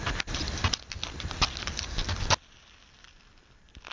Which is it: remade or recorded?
recorded